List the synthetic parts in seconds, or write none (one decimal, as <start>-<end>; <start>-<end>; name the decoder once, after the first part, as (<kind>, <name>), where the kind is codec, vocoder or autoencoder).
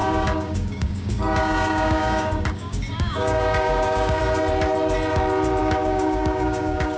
0.0-4.2 (codec, DAC); 5.6-7.0